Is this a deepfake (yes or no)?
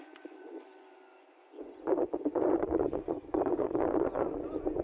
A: yes